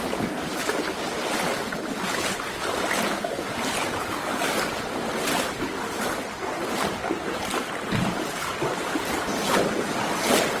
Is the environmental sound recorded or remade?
recorded